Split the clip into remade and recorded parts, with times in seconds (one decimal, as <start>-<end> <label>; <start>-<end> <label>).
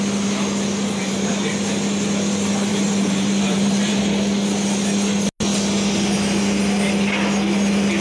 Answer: 0.0-1.0 recorded; 1.0-1.5 remade; 1.5-2.7 recorded; 2.7-4.0 remade; 4.0-8.0 recorded